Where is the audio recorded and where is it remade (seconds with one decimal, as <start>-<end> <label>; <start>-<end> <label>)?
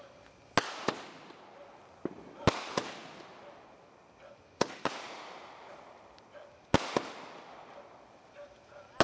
0.0-9.0 recorded